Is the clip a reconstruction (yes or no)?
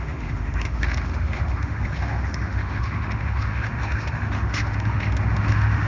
yes